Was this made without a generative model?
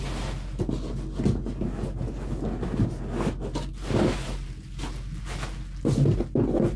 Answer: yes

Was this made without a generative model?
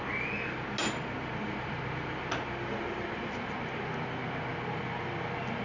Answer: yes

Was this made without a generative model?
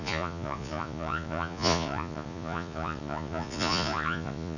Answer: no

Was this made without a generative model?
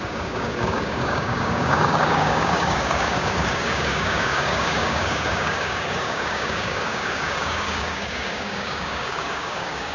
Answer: no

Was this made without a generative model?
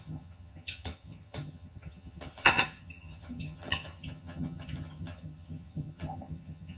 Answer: no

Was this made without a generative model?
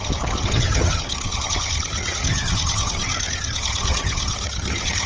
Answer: no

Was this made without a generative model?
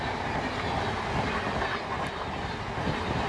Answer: no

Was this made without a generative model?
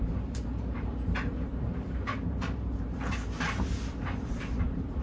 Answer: no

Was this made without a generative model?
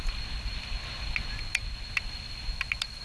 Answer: yes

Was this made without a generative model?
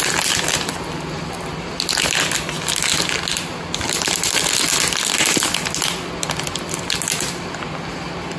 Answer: yes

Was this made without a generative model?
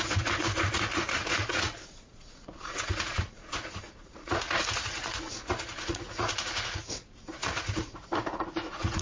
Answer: no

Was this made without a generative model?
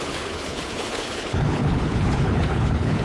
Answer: no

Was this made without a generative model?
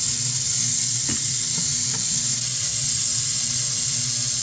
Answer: yes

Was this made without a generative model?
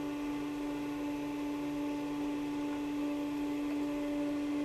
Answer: yes